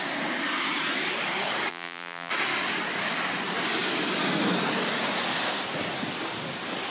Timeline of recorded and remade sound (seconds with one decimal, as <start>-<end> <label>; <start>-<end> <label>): 0.0-1.7 recorded; 1.7-2.3 remade; 2.3-6.9 recorded